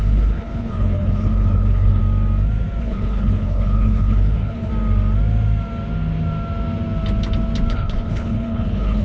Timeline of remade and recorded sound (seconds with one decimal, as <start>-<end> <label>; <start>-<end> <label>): 0.0-2.0 remade; 2.0-2.8 recorded; 2.8-4.7 remade; 4.7-7.7 recorded; 7.7-9.0 remade